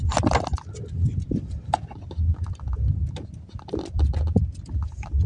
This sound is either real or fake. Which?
fake